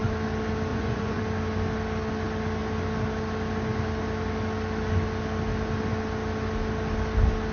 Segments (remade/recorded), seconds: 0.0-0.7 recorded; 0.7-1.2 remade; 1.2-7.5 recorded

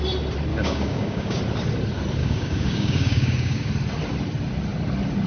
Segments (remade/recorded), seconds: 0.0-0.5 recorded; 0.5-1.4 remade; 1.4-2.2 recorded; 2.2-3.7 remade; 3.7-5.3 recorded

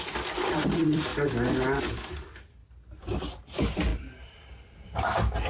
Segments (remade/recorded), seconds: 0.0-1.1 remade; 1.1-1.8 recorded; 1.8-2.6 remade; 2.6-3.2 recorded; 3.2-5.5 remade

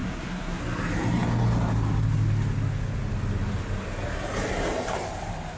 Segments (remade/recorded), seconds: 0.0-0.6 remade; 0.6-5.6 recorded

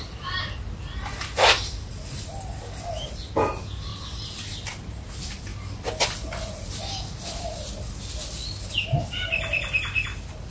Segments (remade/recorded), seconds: 0.0-10.5 recorded

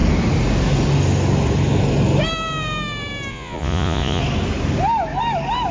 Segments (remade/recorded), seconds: 0.0-3.3 recorded; 3.3-4.2 remade; 4.2-5.7 recorded

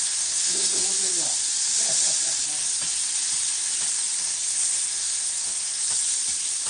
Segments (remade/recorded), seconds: 0.0-0.8 remade; 0.8-4.2 recorded; 4.2-5.8 remade; 5.8-6.7 recorded

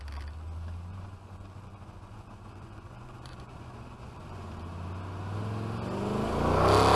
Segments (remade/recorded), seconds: 0.0-0.9 recorded; 0.9-4.6 remade; 4.6-7.0 recorded